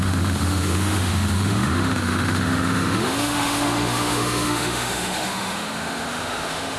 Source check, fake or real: fake